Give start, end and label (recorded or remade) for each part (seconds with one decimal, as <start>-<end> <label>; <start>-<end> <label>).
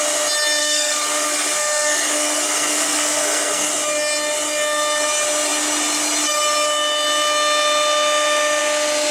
0.0-0.6 recorded; 0.6-3.7 remade; 3.7-9.1 recorded